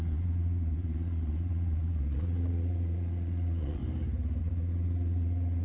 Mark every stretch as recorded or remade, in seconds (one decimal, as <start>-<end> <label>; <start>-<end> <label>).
0.0-3.8 remade; 3.8-4.4 recorded; 4.4-5.6 remade